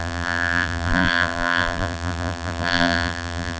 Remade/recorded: remade